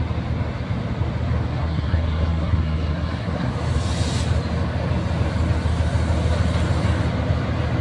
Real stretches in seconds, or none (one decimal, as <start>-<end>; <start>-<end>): 0.0-1.5; 3.5-7.8